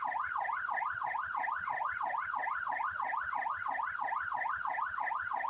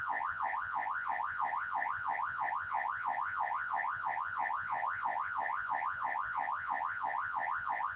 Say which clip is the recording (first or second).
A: first